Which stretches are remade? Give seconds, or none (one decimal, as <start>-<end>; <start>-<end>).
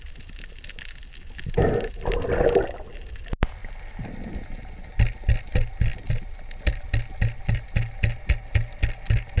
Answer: none